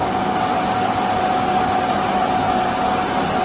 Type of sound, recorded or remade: recorded